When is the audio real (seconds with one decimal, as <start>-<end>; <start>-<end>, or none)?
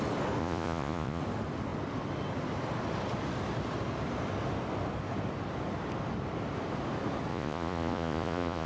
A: 0.0-0.4; 1.2-7.3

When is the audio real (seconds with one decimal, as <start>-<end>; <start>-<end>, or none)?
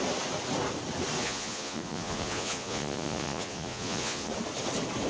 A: 0.0-1.2; 4.3-5.1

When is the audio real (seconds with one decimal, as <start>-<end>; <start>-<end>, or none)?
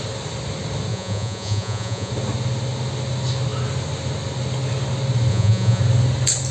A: 0.0-0.9; 2.1-5.3; 5.8-6.5